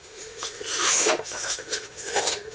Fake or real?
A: fake